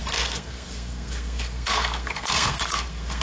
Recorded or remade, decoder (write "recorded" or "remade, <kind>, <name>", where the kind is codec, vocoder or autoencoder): remade, codec, SNAC